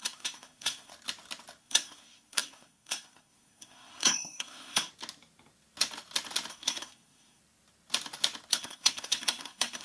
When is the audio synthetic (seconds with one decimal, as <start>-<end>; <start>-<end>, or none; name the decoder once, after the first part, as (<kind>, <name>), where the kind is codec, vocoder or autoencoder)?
0.0-0.9 (codec, SNAC); 1.6-4.9; 6.5-7.4; 8.5-9.8